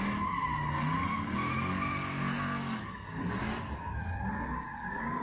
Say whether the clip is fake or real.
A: real